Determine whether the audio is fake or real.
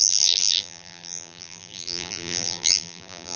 fake